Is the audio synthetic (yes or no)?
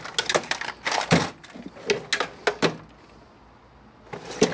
no